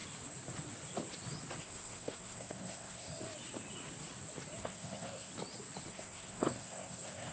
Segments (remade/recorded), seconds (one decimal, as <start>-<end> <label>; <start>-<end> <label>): 0.0-1.6 recorded; 1.6-3.1 remade; 3.1-4.6 recorded; 4.6-5.3 remade; 5.3-5.9 recorded; 5.9-7.3 remade